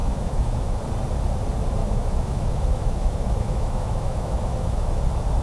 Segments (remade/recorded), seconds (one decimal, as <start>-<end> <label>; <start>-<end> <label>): 0.0-0.8 remade; 0.8-1.8 recorded; 1.8-5.0 remade; 5.0-5.4 recorded